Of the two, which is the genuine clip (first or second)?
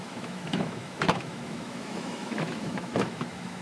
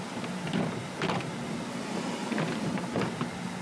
second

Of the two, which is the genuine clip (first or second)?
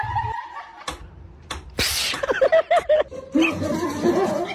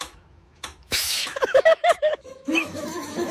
first